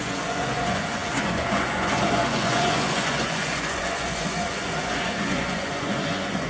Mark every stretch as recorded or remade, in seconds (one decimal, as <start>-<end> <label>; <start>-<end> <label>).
0.0-6.5 remade

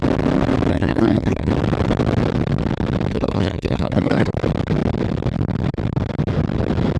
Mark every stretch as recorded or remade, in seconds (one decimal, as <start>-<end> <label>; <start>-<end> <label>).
0.0-0.7 recorded; 0.7-1.5 remade; 1.5-3.1 recorded; 3.1-4.3 remade; 4.3-7.0 recorded

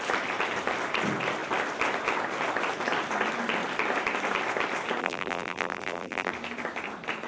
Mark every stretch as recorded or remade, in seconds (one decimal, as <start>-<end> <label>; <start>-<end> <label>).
0.0-5.0 recorded; 5.0-6.3 remade; 6.3-7.3 recorded

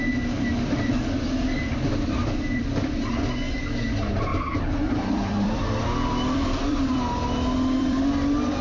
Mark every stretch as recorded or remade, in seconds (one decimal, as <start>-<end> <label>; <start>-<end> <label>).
0.0-0.5 recorded; 0.5-3.1 remade; 3.1-4.3 recorded; 4.3-8.6 remade

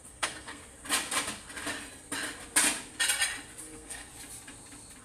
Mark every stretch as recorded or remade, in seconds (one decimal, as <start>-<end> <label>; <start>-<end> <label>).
0.0-0.6 remade; 0.6-3.6 recorded; 3.6-4.1 remade; 4.1-5.0 recorded

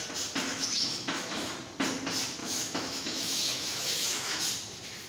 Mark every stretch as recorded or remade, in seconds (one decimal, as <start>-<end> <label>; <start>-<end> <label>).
0.0-0.5 recorded; 0.5-1.5 remade; 1.5-2.4 recorded; 2.4-4.4 remade; 4.4-5.1 recorded